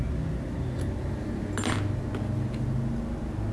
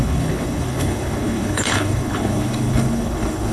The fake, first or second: second